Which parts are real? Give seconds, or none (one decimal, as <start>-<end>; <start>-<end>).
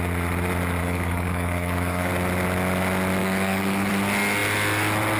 0.0-0.8; 2.1-3.2; 3.9-5.2